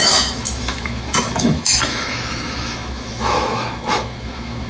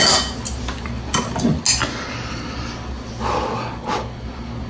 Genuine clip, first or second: second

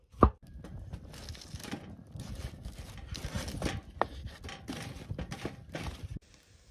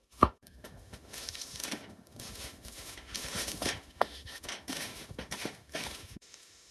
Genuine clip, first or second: first